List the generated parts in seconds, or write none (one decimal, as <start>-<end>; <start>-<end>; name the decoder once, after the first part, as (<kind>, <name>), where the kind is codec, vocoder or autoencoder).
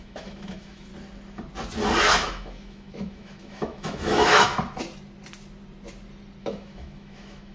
0.0-0.9 (autoencoder, DAC-VAE); 2.0-4.5; 6.4-7.5